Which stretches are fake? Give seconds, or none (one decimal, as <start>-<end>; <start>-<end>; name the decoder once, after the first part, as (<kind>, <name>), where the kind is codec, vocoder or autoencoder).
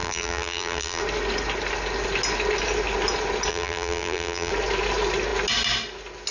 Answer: 0.0-1.0 (vocoder, BigVGAN v2); 3.5-4.5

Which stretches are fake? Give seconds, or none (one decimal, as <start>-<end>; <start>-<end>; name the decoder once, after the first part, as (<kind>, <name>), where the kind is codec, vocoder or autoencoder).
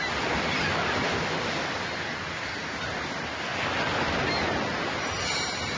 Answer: none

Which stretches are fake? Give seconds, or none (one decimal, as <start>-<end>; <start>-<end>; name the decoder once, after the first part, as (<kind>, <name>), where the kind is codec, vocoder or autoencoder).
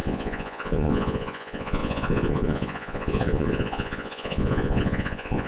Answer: 0.0-5.5 (vocoder, Vocos)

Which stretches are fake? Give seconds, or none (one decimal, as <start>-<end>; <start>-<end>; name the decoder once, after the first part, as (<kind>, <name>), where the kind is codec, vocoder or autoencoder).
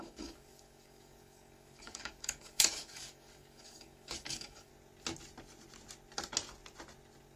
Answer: 0.0-4.7 (codec, DAC)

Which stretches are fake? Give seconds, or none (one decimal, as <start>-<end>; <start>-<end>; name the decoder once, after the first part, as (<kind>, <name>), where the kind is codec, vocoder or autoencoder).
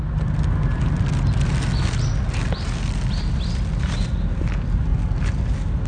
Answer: none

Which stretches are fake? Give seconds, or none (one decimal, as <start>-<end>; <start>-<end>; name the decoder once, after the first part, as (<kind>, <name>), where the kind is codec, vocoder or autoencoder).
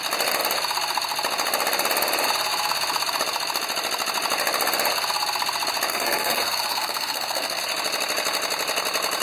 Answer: 5.9-7.6 (codec, SNAC)